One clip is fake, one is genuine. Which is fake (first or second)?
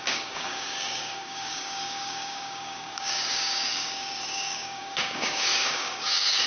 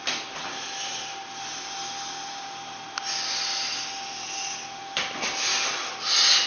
first